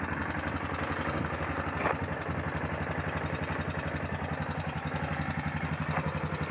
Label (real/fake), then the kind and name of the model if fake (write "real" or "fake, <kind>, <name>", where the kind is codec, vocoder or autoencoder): real